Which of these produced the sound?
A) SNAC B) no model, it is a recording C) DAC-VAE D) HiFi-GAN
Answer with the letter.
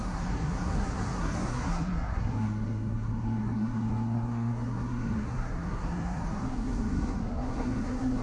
A